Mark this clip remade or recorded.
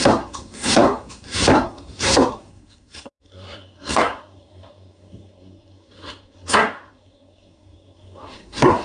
remade